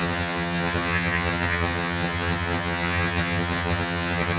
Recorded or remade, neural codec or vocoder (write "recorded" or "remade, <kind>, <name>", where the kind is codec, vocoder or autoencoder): remade, vocoder, HiFi-GAN